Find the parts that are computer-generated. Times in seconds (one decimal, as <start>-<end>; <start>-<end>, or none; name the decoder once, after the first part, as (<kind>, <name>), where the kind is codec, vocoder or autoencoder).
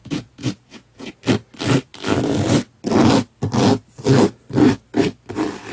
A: 0.0-1.1 (vocoder, Vocos)